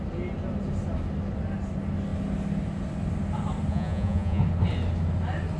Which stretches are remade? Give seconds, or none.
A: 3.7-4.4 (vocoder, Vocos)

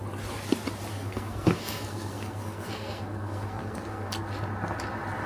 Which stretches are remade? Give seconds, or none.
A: 0.9-4.1 (codec, SNAC)

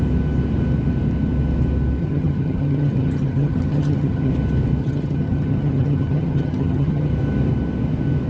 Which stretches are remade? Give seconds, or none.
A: 2.0-4.3 (vocoder, HiFi-GAN); 4.8-7.1